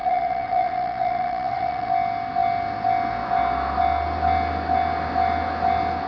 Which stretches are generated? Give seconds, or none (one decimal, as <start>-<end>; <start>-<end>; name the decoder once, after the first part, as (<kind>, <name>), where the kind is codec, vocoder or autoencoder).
0.0-1.9 (vocoder, WaveNeXt)